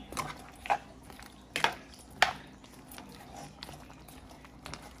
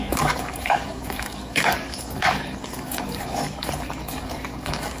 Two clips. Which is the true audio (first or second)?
first